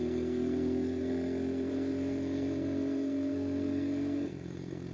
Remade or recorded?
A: remade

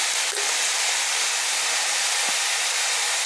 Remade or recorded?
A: recorded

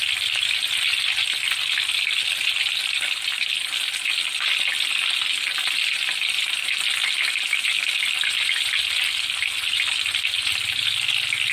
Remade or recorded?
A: recorded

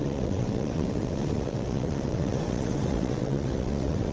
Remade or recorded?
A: remade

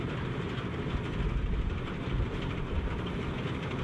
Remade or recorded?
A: recorded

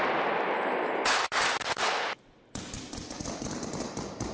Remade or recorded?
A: recorded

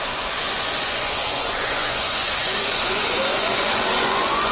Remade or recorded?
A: remade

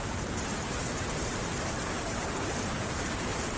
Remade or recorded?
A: remade